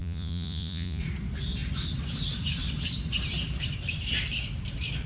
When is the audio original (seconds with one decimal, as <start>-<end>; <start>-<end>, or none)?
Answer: 1.0-5.1